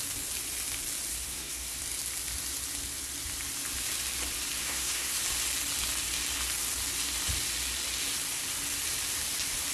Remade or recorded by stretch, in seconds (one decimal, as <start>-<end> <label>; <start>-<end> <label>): 0.0-1.1 recorded; 1.1-1.8 remade; 1.8-4.6 recorded; 4.6-5.2 remade; 5.2-9.7 recorded